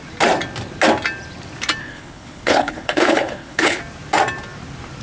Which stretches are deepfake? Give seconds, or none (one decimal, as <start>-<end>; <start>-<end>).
1.8-3.8